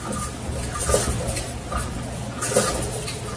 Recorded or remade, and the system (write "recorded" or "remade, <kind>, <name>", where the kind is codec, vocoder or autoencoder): recorded